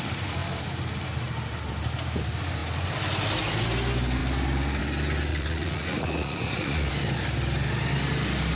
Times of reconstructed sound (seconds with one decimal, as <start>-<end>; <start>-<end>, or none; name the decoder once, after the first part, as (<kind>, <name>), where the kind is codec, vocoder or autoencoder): 5.3-6.9 (vocoder, Vocos)